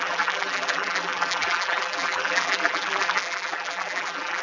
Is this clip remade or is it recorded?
remade